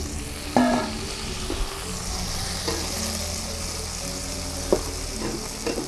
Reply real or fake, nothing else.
real